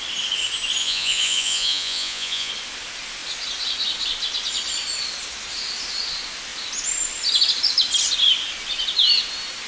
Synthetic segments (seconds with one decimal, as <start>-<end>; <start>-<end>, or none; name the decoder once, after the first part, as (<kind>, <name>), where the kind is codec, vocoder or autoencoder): 0.8-2.5 (vocoder, Vocos)